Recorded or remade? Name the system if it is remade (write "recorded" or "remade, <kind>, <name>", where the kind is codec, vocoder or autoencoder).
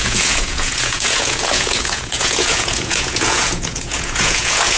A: remade, vocoder, Vocos